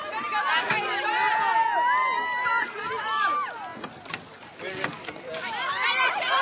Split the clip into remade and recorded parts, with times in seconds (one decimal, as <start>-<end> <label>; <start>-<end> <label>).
0.0-0.6 recorded; 0.6-1.2 remade; 1.2-2.8 recorded; 2.8-6.4 remade